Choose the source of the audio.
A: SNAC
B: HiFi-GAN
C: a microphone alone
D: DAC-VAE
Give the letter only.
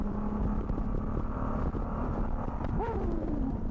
C